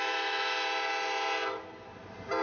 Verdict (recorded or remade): recorded